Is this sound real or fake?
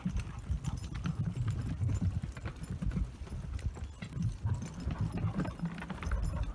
real